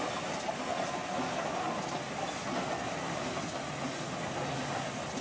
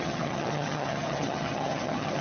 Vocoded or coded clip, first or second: second